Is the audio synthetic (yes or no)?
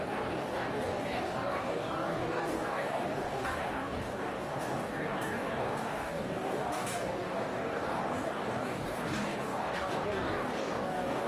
yes